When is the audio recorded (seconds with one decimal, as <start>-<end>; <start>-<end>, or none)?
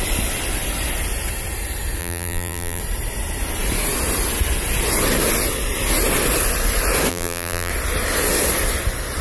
0.0-2.0; 2.8-7.1; 7.7-9.2